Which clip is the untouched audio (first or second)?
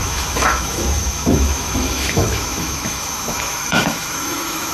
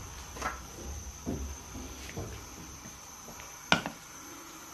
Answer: second